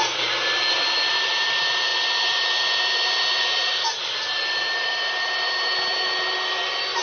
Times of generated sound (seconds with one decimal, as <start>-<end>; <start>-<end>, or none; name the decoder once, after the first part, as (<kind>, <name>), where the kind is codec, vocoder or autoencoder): none